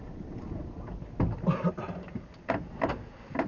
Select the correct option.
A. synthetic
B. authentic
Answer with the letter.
B